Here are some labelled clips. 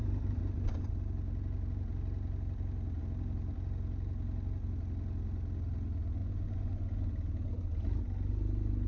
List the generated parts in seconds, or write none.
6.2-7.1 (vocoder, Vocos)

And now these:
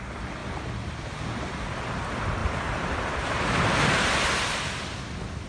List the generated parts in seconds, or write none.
2.4-5.0 (vocoder, BigVGAN v2)

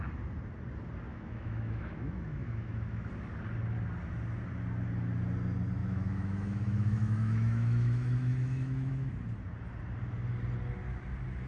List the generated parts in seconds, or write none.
1.1-3.1 (autoencoder, DAC-VAE); 5.8-9.1

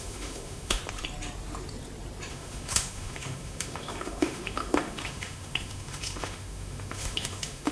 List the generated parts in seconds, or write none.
0.0-0.8 (autoencoder, DAC-VAE); 2.3-7.7

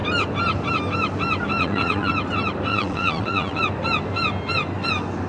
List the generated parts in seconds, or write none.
1.6-2.1 (vocoder, WaveNeXt); 2.7-3.6